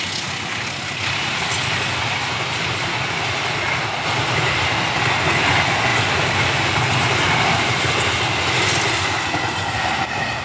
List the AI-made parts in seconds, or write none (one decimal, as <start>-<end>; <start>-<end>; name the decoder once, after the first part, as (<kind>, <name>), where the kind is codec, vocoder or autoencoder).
5.9-6.8 (vocoder, BigVGAN v2)